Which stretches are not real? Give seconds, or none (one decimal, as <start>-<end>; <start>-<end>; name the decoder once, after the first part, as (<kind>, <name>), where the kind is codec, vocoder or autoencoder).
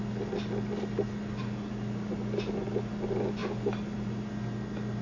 none